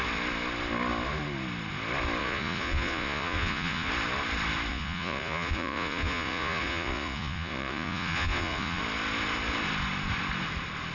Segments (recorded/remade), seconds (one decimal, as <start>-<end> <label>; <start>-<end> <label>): 0.0-2.2 recorded; 2.2-3.9 remade; 3.9-4.7 recorded; 4.7-8.8 remade; 8.8-10.9 recorded